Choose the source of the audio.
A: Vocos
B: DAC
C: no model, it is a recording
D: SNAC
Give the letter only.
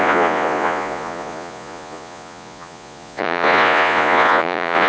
A